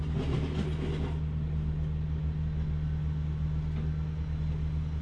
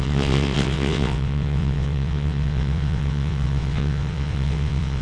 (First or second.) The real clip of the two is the first